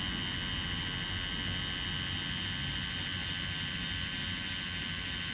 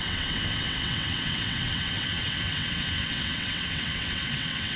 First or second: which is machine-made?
second